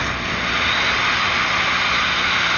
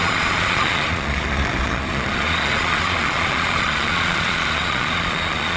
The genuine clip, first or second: first